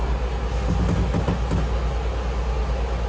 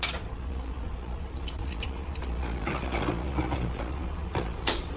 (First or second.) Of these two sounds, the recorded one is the first